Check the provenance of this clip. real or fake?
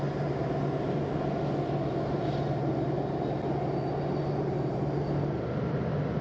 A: real